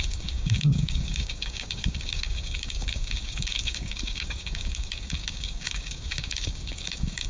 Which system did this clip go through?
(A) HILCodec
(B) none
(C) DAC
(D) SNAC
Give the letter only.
C